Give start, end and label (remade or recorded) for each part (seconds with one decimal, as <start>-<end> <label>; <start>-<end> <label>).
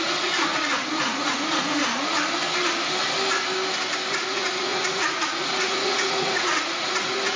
0.0-1.8 remade; 1.8-4.1 recorded; 4.1-7.4 remade